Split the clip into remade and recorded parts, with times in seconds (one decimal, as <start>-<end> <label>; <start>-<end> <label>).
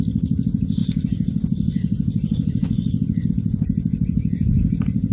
0.0-5.1 recorded